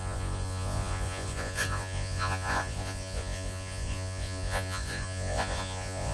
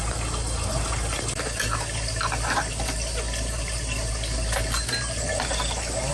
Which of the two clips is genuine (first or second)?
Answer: second